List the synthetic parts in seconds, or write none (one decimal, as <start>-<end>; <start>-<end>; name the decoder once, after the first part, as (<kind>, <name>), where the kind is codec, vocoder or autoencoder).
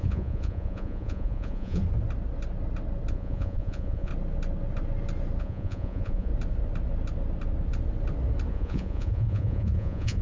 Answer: 0.0-1.8 (vocoder, Vocos); 3.1-4.1; 5.4-6.3; 8.5-10.2